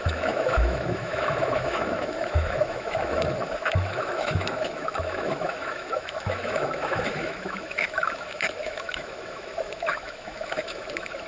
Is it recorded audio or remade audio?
remade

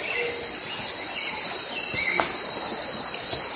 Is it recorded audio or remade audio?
recorded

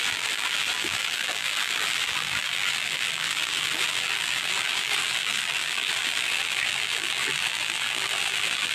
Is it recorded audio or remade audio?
remade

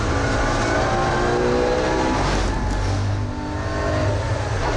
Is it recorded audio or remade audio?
recorded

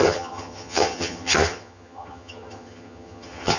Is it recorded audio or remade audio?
remade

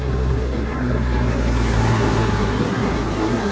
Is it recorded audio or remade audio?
remade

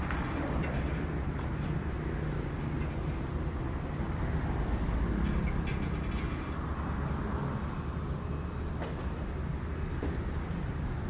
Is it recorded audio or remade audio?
recorded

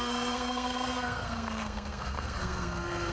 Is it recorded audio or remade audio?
remade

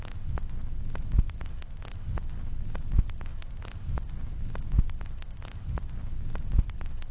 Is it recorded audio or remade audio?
recorded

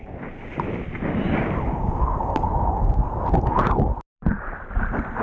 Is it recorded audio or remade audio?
recorded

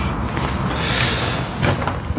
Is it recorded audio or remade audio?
recorded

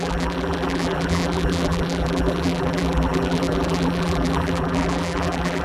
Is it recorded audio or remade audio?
remade